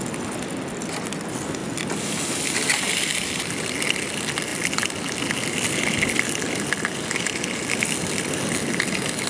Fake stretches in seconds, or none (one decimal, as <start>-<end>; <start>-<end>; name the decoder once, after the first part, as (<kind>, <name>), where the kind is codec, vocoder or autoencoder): none